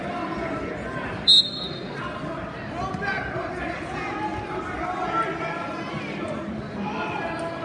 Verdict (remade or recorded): recorded